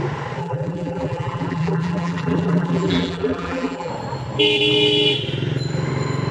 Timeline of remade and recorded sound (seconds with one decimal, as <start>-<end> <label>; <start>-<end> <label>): 0.0-0.4 recorded; 0.4-3.9 remade; 3.9-6.3 recorded